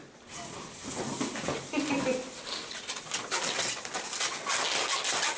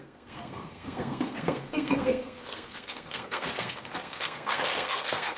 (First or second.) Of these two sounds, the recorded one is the first